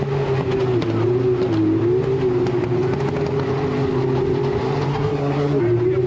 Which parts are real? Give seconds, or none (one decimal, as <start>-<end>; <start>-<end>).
0.0-4.9; 5.6-6.1